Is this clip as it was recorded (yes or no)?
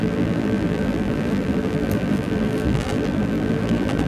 no